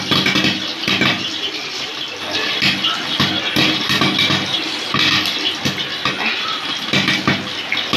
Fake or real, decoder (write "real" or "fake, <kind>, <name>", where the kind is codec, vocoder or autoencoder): real